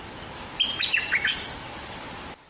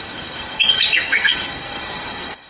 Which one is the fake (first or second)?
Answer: second